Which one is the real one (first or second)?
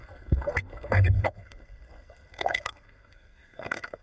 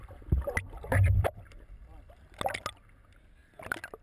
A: second